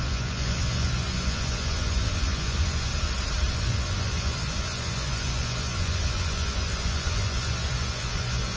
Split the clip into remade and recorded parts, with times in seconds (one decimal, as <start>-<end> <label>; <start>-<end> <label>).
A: 0.0-2.9 remade; 2.9-3.5 recorded; 3.5-8.6 remade